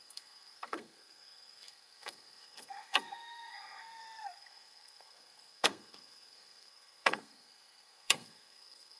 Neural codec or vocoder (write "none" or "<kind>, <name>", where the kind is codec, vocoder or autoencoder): codec, SNAC